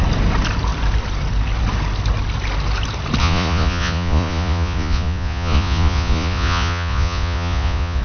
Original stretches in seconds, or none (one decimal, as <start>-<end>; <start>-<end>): 0.0-3.2